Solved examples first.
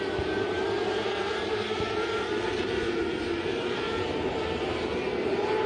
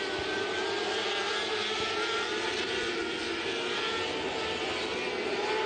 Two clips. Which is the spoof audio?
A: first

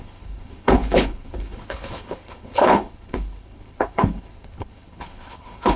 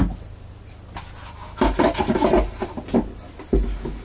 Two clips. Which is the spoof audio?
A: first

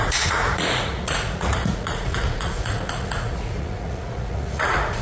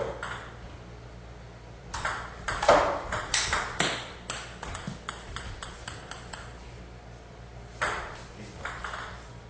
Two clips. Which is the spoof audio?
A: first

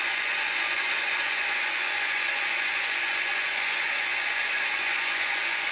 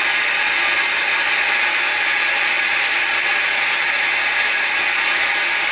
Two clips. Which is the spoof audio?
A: first